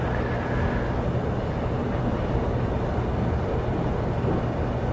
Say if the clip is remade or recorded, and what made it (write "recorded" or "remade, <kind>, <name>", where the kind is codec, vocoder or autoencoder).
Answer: recorded